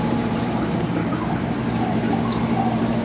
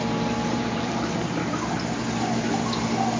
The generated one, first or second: first